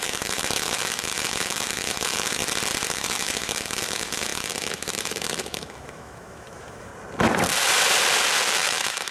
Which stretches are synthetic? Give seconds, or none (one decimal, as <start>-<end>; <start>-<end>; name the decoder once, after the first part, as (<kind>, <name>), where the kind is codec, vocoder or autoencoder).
0.0-2.4 (autoencoder, DAC-VAE); 2.9-6.9; 8.5-9.1